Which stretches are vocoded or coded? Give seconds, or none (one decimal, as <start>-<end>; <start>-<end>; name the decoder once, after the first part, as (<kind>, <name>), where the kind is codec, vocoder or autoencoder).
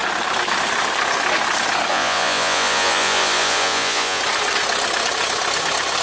1.9-4.2 (vocoder, Vocos)